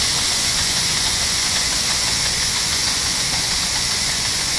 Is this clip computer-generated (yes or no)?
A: yes